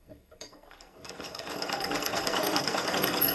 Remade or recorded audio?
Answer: remade